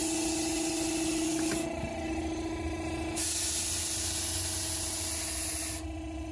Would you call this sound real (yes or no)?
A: yes